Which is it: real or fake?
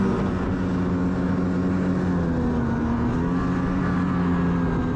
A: real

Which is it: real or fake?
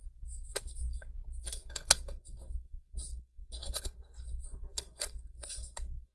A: fake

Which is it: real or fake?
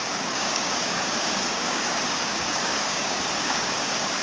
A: fake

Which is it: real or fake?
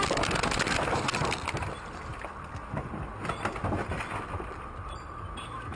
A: real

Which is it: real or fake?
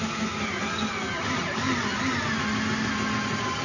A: real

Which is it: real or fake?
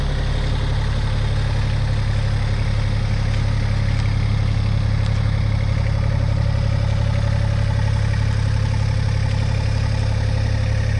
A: real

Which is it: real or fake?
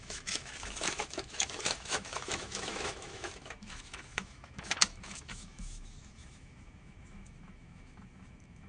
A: fake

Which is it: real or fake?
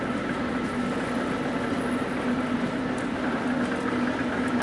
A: real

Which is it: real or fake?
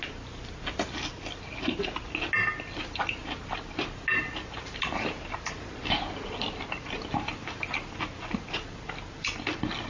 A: real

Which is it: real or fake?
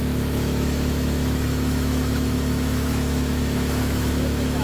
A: fake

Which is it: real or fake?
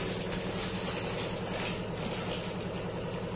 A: real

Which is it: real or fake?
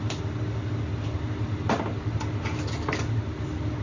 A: real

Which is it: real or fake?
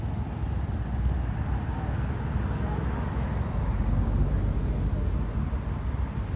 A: real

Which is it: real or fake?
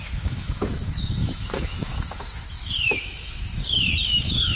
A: fake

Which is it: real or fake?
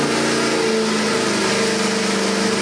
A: real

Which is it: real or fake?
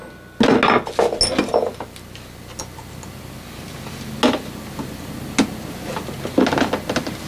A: real